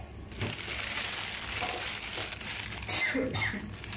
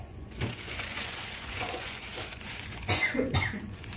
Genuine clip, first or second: first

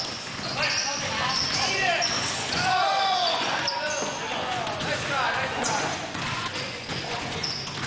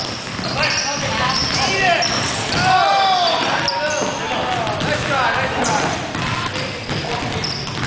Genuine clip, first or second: second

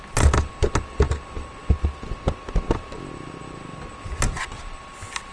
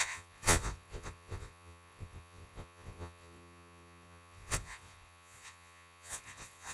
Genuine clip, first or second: first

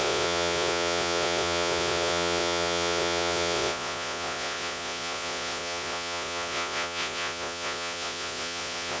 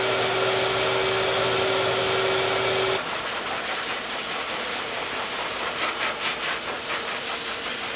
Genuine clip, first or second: second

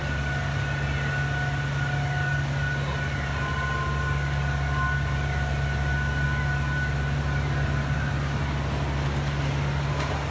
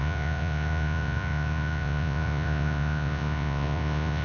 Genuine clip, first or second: first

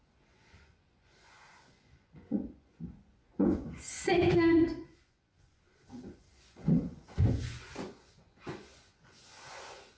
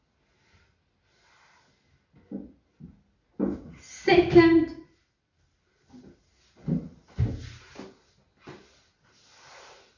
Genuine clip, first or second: second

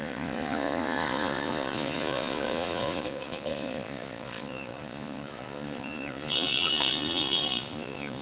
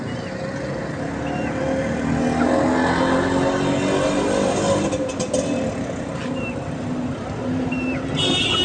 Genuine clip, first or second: second